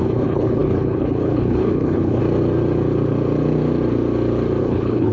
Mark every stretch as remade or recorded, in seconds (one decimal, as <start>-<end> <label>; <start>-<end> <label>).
0.0-2.2 remade; 2.2-4.6 recorded; 4.6-5.1 remade